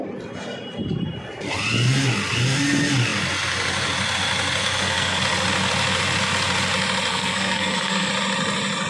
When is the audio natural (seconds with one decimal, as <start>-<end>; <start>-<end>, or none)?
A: 0.0-4.6; 5.2-7.1; 8.1-8.9